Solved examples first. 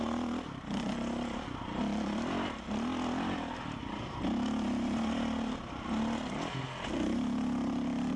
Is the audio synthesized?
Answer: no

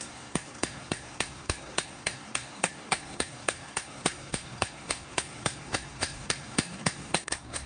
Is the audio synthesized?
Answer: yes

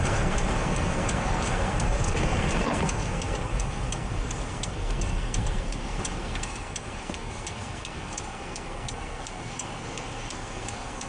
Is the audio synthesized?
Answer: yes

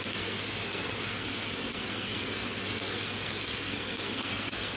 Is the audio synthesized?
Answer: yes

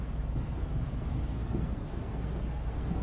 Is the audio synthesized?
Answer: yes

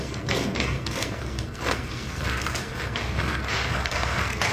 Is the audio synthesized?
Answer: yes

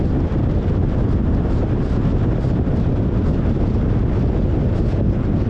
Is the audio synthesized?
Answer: no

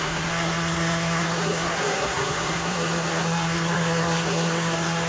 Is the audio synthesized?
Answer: yes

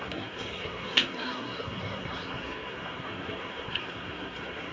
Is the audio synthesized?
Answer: yes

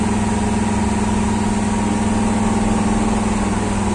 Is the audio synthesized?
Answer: no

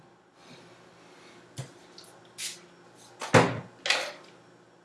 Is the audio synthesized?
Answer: no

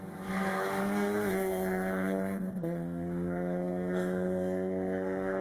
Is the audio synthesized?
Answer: yes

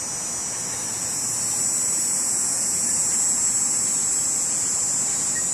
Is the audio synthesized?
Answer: no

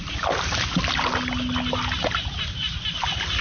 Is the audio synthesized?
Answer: no